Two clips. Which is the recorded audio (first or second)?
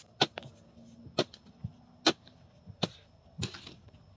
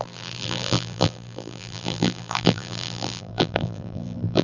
first